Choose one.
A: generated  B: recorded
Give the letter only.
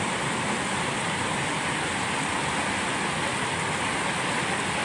B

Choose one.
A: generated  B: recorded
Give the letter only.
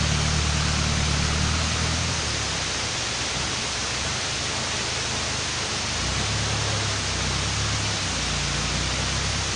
B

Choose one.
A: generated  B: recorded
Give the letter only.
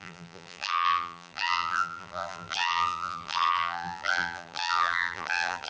A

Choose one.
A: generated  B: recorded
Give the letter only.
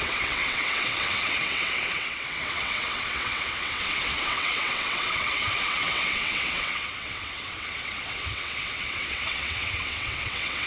A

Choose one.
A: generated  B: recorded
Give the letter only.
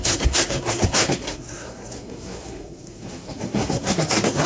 A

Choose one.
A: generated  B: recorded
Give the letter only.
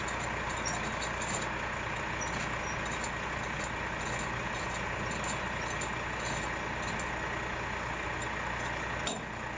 B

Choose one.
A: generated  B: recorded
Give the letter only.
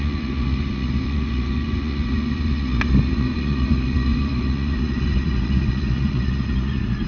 A